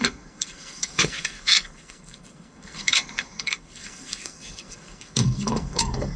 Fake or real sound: fake